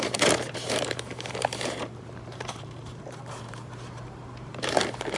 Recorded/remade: remade